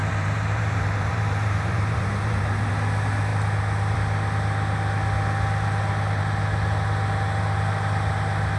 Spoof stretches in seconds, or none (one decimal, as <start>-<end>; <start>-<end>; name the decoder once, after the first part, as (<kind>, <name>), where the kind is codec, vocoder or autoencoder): 0.0-2.7 (vocoder, BigVGAN v2)